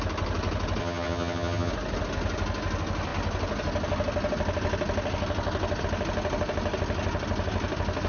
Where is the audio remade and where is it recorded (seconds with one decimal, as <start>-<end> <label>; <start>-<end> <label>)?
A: 0.0-0.8 recorded; 0.8-1.7 remade; 1.7-8.1 recorded